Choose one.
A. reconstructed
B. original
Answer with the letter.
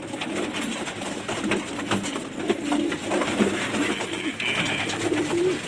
B